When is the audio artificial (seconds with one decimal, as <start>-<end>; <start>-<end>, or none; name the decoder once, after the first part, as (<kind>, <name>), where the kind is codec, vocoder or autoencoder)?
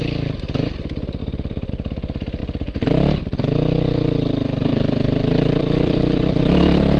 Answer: 1.2-1.7 (vocoder, BigVGAN v2); 4.7-6.2